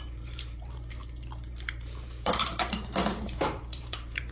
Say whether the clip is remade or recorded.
remade